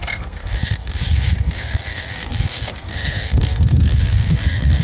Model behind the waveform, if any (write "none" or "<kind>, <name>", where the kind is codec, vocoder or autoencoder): codec, SNAC